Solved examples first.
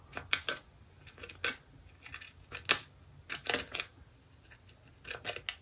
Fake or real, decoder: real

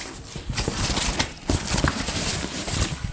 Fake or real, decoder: real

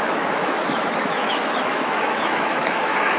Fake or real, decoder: fake, autoencoder, DAC-VAE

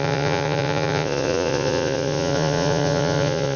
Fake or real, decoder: fake, vocoder, Vocos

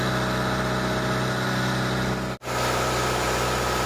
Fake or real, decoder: real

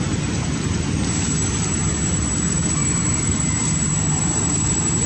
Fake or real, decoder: real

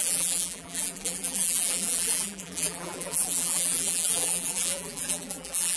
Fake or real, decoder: fake, vocoder, BigVGAN v2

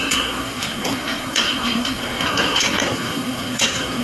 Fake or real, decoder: fake, codec, SNAC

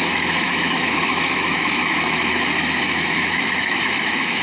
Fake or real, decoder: fake, autoencoder, DAC-VAE